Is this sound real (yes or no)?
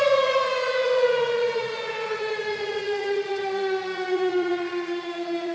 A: no